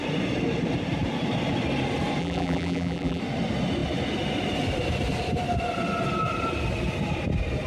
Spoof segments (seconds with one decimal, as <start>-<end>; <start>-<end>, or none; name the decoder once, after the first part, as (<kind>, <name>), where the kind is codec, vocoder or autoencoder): 2.2-3.2 (vocoder, BigVGAN v2)